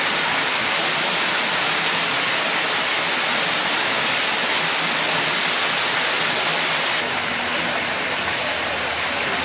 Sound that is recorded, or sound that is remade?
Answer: recorded